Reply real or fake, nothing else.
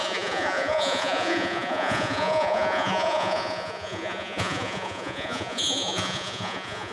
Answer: fake